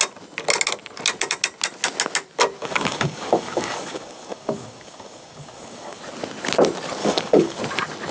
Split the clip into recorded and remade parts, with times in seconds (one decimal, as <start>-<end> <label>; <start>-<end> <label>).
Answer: 0.0-2.6 recorded; 2.6-6.0 remade; 6.0-7.0 recorded; 7.0-7.6 remade; 7.6-8.1 recorded